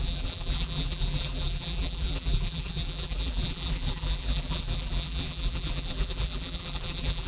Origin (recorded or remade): remade